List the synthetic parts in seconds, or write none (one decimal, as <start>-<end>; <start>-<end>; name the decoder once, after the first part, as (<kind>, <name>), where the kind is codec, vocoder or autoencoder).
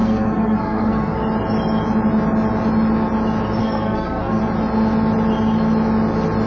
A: 0.0-1.2 (codec, SNAC); 3.6-4.4